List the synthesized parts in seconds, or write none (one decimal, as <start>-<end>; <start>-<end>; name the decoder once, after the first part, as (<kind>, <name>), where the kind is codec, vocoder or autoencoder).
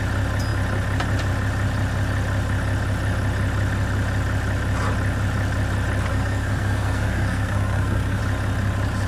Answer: 6.1-8.2 (codec, SNAC)